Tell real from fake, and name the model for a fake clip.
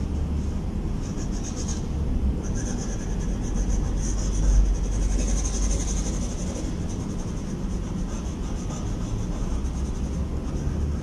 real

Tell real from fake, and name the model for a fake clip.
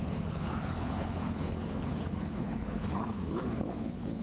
fake, codec, HILCodec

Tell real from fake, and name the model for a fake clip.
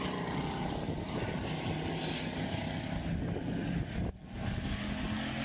real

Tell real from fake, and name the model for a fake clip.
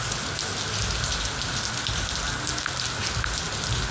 real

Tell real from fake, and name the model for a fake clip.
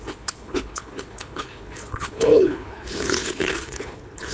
fake, codec, HILCodec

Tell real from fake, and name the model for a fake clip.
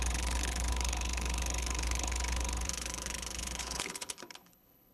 fake, codec, HILCodec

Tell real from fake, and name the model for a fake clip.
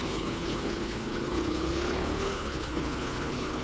fake, codec, HILCodec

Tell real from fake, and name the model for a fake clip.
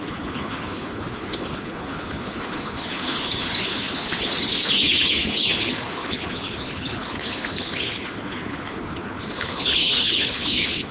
fake, codec, HILCodec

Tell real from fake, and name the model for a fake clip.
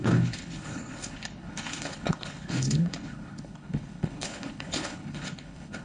fake, codec, HILCodec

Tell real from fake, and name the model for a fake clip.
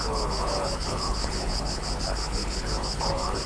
fake, codec, HILCodec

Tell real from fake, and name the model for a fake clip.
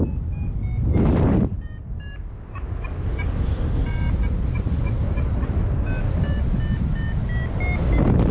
real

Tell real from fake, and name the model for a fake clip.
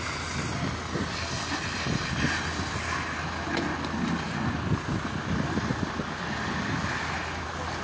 real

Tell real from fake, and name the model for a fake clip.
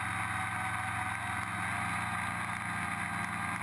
real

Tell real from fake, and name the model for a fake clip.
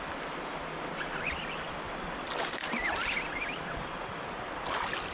real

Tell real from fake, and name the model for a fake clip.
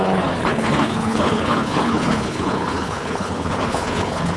fake, codec, HILCodec